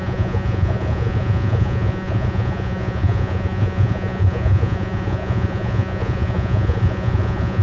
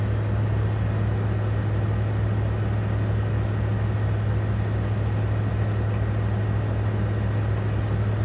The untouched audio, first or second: second